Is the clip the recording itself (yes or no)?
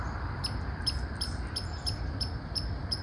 no